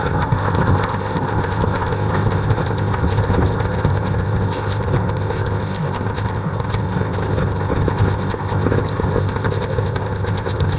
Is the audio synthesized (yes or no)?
yes